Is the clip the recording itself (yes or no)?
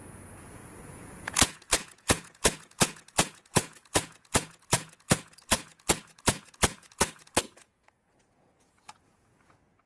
no